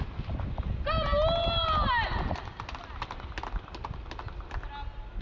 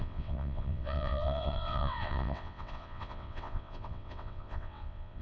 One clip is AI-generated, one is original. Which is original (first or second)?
first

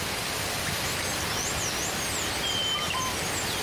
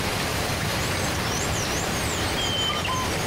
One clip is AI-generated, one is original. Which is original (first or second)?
first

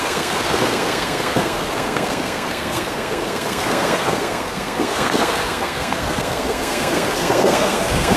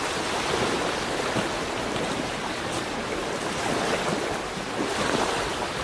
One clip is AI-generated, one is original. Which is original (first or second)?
second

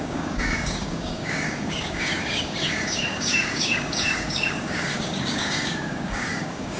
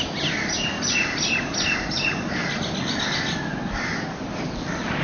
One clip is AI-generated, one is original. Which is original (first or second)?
second